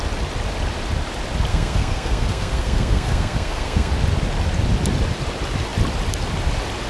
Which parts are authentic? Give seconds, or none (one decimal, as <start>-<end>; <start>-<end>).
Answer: 0.0-1.5; 3.9-6.9